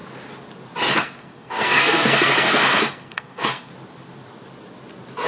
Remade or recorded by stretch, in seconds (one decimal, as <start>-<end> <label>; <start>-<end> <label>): 0.0-0.9 recorded; 0.9-3.7 remade; 3.7-5.3 recorded